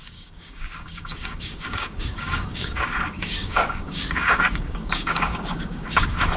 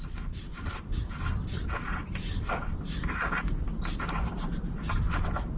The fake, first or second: first